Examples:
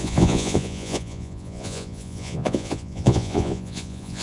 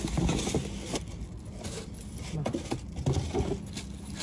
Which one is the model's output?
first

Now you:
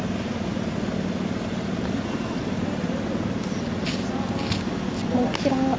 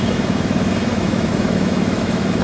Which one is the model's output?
second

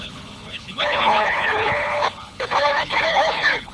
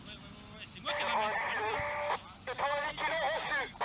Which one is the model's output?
first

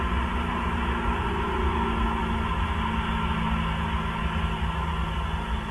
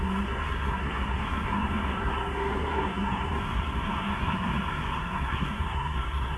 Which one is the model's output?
second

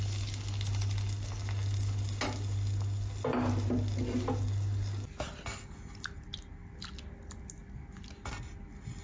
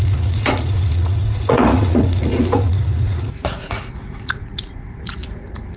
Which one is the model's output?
second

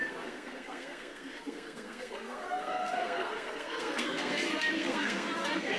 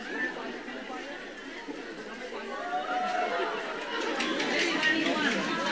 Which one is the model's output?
first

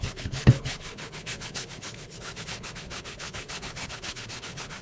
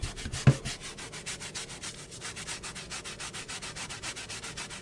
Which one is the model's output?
first